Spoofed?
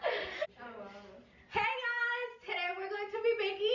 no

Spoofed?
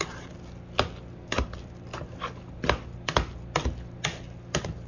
no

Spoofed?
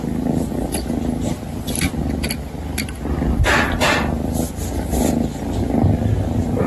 no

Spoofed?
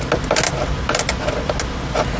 no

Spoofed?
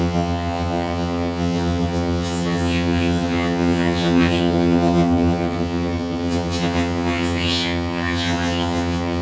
yes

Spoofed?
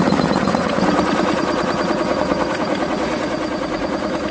yes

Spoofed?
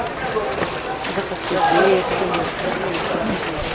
no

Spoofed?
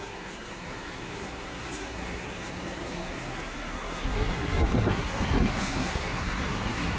yes